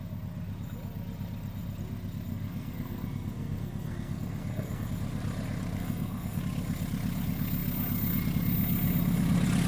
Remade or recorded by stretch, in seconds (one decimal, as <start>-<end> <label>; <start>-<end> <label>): 0.0-2.3 recorded; 2.3-4.9 remade; 4.9-5.8 recorded; 5.8-6.4 remade; 6.4-9.7 recorded